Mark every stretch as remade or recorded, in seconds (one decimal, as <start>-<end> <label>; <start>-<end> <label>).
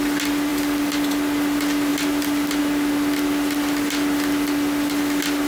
0.0-0.5 recorded; 0.5-1.1 remade; 1.1-5.5 recorded